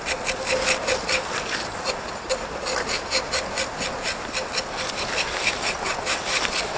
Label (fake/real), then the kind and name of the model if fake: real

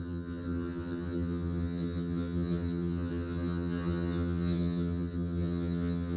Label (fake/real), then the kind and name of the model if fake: fake, vocoder, HiFi-GAN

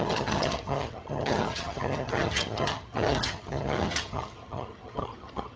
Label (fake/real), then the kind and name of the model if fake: fake, vocoder, HiFi-GAN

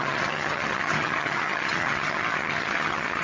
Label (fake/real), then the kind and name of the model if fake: fake, vocoder, HiFi-GAN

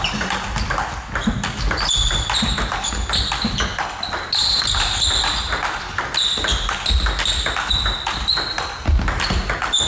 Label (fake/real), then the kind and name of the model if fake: real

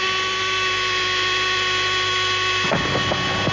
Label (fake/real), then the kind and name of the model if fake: real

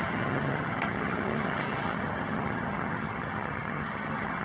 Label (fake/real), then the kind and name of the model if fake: fake, vocoder, HiFi-GAN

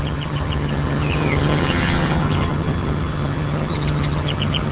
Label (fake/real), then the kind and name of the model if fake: fake, vocoder, HiFi-GAN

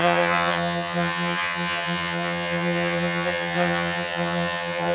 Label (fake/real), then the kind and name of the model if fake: fake, vocoder, HiFi-GAN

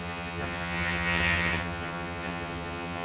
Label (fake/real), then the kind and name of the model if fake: fake, vocoder, HiFi-GAN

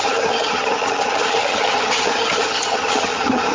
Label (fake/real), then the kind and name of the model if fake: fake, vocoder, HiFi-GAN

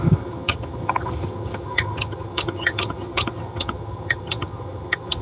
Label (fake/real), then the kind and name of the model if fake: fake, vocoder, HiFi-GAN